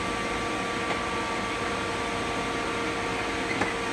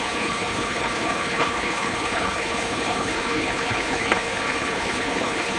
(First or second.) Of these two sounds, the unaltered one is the first